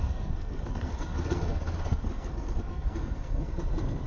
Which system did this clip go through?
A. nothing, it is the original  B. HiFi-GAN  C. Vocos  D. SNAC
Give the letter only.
D